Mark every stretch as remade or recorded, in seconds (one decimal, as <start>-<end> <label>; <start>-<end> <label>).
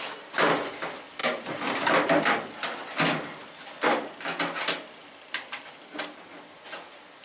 0.0-1.2 recorded; 1.2-1.9 remade; 1.9-3.4 recorded; 3.4-4.1 remade; 4.1-5.0 recorded; 5.0-6.2 remade; 6.2-7.2 recorded